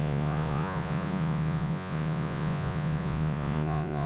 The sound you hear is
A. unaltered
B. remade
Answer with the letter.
B